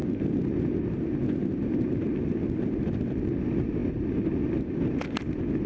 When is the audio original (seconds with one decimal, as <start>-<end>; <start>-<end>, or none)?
0.0-5.7